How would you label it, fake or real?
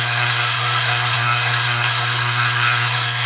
fake